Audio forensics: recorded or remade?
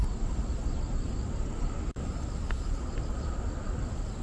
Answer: recorded